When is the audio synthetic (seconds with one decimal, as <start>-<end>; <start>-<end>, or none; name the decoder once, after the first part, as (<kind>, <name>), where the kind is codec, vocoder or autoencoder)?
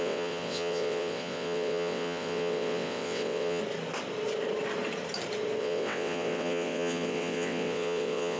0.0-3.6 (vocoder, WaveNeXt); 5.6-8.4